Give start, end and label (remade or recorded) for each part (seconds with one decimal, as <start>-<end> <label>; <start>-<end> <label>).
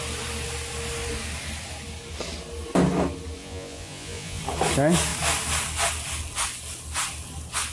0.0-3.4 recorded; 3.4-4.4 remade; 4.4-7.7 recorded